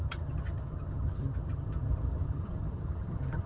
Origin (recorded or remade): remade